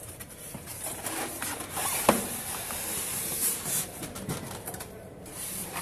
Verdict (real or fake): fake